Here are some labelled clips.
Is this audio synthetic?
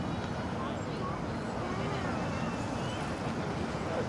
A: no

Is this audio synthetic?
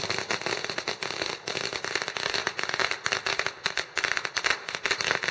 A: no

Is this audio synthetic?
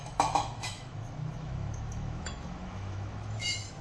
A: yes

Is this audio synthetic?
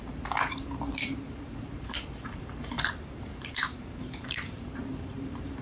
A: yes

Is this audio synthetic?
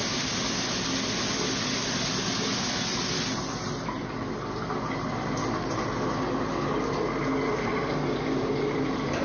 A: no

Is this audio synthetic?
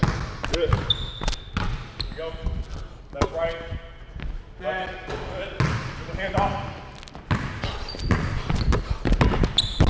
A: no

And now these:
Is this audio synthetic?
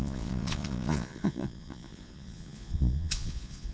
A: yes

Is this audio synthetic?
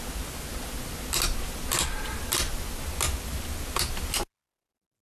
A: no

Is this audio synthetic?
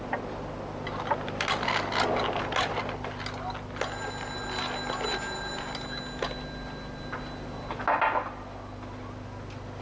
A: no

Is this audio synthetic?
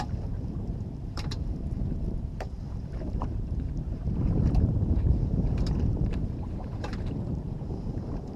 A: yes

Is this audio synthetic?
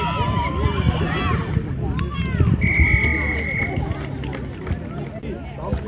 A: no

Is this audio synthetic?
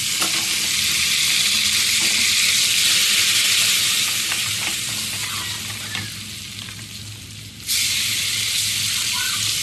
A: no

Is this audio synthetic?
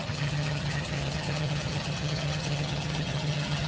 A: yes